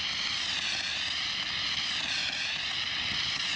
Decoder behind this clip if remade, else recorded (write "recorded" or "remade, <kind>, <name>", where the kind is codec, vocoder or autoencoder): recorded